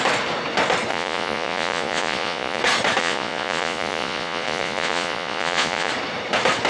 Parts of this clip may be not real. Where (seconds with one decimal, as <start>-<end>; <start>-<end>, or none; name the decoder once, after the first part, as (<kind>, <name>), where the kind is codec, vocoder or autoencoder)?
0.9-2.6 (vocoder, Vocos); 3.0-5.9